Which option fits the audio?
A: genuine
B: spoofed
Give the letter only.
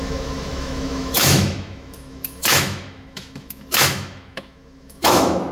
B